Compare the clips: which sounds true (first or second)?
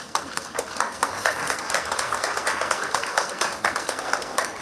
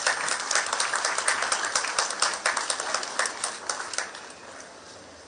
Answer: second